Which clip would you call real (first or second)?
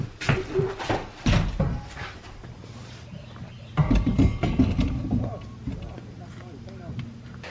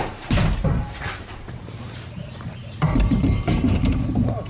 first